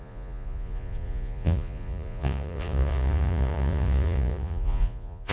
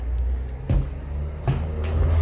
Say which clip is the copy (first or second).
first